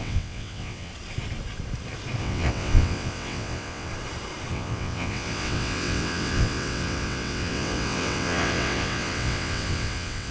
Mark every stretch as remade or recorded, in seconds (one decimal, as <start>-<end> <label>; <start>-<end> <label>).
0.0-0.9 remade; 0.9-2.2 recorded; 2.2-3.9 remade; 3.9-4.5 recorded; 4.5-10.3 remade